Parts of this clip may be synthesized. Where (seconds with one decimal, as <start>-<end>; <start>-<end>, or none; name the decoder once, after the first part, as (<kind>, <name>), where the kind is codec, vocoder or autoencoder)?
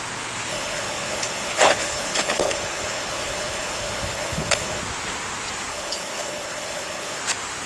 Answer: 0.5-4.8 (codec, HILCodec); 5.7-7.2